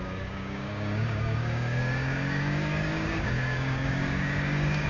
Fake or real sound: fake